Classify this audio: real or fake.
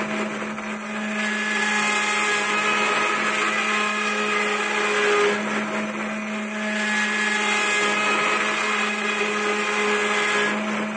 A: real